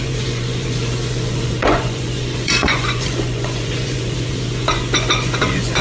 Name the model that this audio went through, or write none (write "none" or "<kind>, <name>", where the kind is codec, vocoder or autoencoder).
vocoder, Vocos